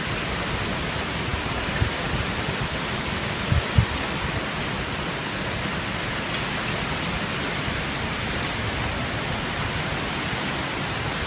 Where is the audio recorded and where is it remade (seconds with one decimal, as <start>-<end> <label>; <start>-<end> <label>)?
0.0-11.3 recorded